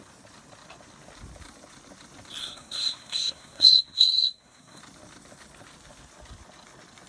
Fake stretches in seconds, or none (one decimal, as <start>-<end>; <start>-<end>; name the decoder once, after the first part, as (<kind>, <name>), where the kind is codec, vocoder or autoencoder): 2.4-4.8 (codec, SNAC)